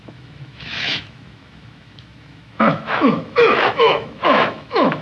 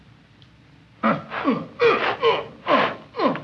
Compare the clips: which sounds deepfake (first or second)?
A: first